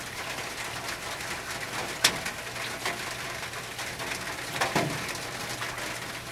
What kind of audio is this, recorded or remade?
recorded